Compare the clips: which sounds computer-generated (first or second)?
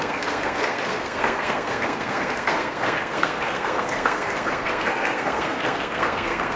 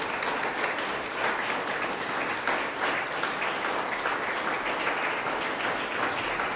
first